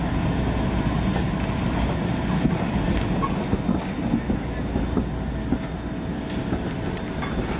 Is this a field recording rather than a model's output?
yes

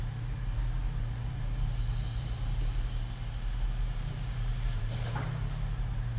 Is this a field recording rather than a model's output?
no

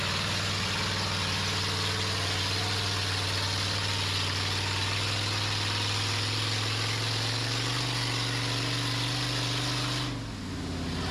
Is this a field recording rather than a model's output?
yes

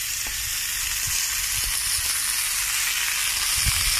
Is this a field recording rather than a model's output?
yes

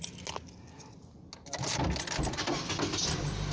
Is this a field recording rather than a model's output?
yes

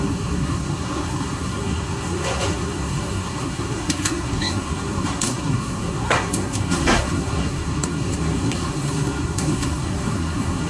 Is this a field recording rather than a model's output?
no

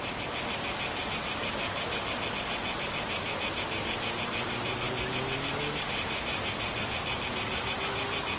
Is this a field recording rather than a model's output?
yes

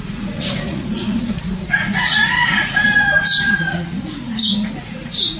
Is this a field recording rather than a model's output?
no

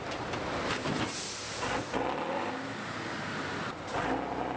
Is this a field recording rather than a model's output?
yes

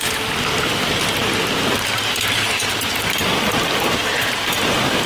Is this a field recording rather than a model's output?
no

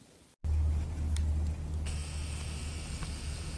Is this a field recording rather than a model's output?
yes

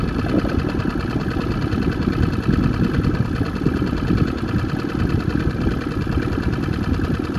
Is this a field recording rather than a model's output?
yes